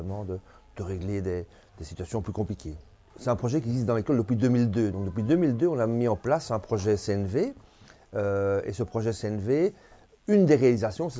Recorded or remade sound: recorded